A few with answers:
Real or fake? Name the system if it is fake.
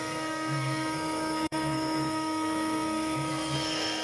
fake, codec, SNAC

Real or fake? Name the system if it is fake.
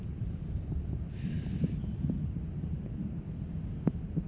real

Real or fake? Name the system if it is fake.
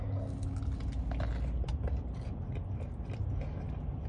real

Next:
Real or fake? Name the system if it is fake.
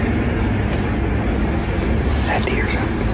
real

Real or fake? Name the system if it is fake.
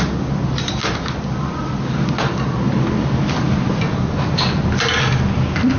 real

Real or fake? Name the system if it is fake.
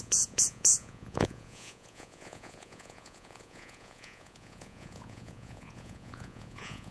fake, vocoder, Vocos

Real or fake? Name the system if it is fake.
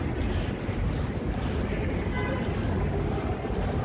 real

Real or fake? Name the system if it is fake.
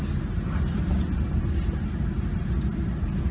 real